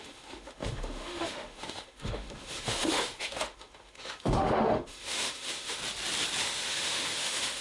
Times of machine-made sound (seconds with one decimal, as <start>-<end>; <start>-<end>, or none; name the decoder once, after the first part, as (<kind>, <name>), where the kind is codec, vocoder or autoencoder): 0.0-5.8 (autoencoder, DAC-VAE); 6.4-7.6